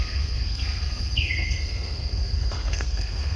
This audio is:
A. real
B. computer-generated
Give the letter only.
B